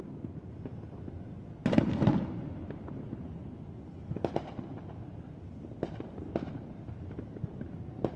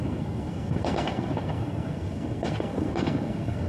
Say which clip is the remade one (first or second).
second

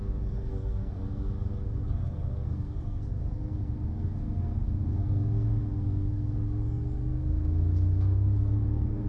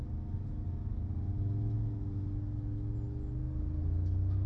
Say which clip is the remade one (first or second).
first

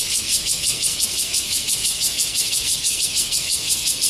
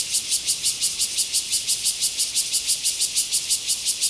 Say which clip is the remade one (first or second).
first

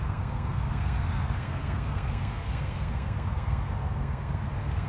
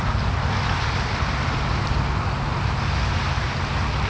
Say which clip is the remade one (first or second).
first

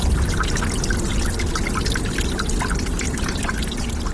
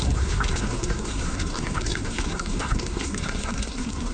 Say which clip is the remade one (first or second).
second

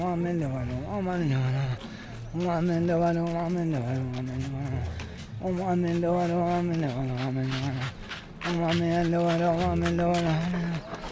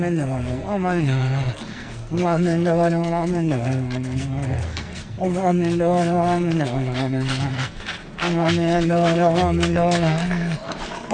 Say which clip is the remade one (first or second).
second